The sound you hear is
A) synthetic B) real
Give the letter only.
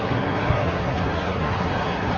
A